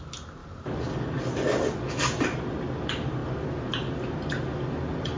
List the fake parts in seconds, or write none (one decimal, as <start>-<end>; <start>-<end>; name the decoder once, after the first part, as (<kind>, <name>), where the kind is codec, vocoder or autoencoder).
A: none